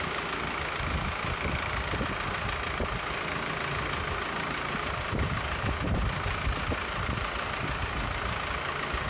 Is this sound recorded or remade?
recorded